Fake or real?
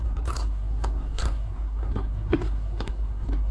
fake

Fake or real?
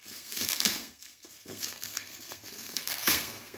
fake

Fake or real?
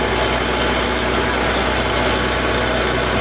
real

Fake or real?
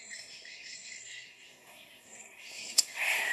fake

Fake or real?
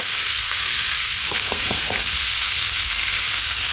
fake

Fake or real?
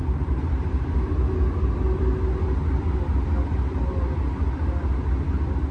real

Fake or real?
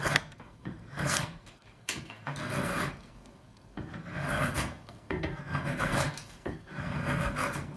fake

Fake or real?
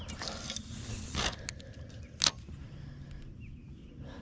real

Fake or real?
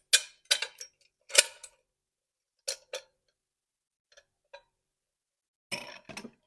real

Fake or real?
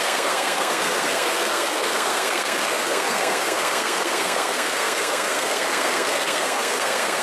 fake